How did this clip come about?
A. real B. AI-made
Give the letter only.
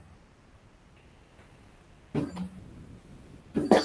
A